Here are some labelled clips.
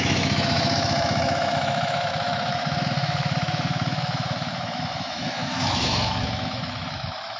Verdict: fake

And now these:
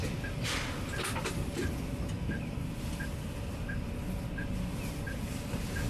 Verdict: real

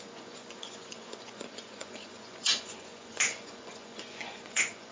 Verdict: fake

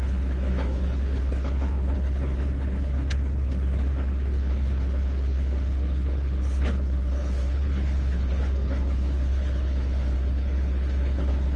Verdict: fake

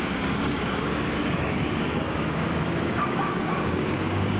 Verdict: fake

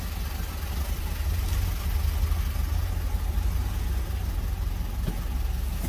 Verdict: real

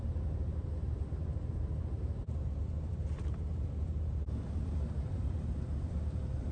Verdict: fake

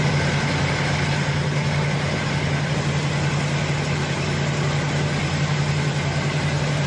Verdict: real